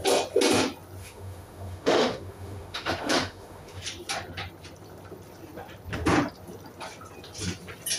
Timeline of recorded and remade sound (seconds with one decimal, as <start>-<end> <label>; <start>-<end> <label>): 0.0-1.0 recorded; 1.0-3.8 remade; 3.8-8.0 recorded